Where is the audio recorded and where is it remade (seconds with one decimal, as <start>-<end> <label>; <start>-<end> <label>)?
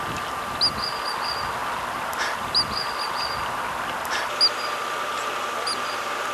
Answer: 0.0-6.3 recorded